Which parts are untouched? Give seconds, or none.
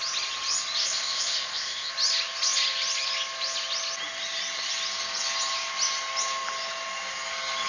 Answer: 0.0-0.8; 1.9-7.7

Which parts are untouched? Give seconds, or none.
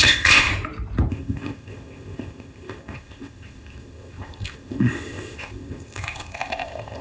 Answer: 0.5-1.1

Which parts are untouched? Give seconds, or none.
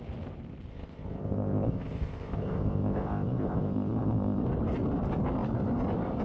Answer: 0.0-0.7; 4.4-6.2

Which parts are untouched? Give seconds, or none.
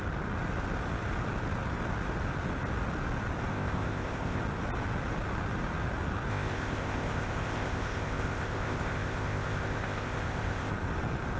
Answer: 0.0-3.5; 4.4-6.3; 10.7-11.4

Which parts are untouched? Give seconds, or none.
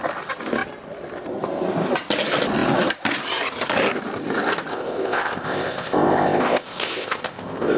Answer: 0.0-4.7